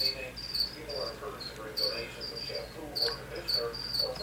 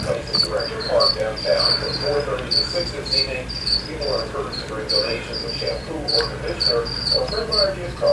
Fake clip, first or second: second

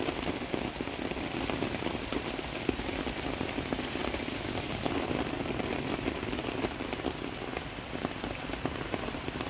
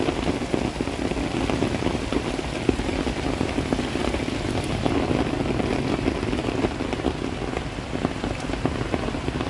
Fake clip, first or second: first